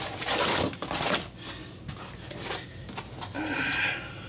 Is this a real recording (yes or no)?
yes